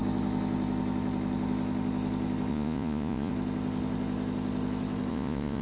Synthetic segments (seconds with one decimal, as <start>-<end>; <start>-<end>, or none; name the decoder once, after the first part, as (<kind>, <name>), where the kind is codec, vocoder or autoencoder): 2.5-3.3 (vocoder, Vocos); 5.1-5.6